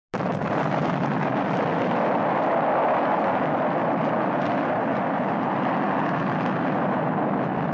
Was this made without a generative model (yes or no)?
yes